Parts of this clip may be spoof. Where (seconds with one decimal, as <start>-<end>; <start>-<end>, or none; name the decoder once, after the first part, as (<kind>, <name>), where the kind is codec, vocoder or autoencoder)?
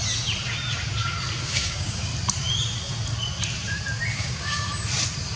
1.4-2.1 (codec, DAC); 4.1-4.7